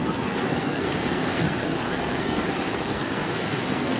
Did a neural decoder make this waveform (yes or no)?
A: yes